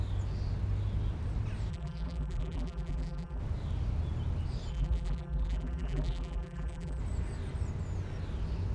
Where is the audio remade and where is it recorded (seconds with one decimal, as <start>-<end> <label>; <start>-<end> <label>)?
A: 0.0-1.7 recorded; 1.7-3.4 remade; 3.4-4.7 recorded; 4.7-7.0 remade; 7.0-8.7 recorded

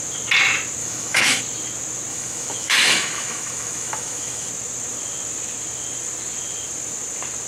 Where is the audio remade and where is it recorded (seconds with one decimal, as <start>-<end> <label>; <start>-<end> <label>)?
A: 0.0-0.8 recorded; 0.8-1.4 remade; 1.4-2.1 recorded; 2.1-4.5 remade; 4.5-7.5 recorded

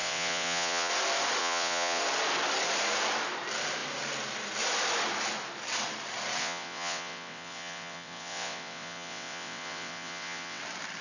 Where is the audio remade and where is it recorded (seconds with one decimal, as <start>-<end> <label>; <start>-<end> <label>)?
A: 0.0-0.9 remade; 0.9-1.4 recorded; 1.4-2.0 remade; 2.0-6.4 recorded; 6.4-10.6 remade; 10.6-11.0 recorded

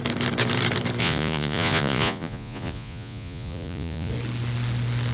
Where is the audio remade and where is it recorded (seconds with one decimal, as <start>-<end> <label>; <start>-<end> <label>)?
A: 0.0-1.0 recorded; 1.0-4.1 remade; 4.1-5.1 recorded

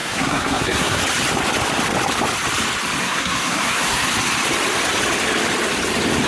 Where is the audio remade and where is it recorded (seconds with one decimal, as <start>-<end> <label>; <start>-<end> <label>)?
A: 0.0-1.0 remade; 1.0-3.0 recorded; 3.0-4.1 remade; 4.1-6.3 recorded

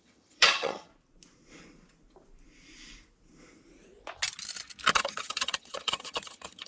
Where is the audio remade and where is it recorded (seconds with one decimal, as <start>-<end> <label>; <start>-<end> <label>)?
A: 0.0-0.9 remade; 0.9-4.9 recorded; 4.9-6.7 remade